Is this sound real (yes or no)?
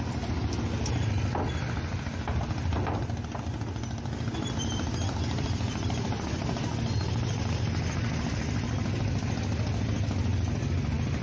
yes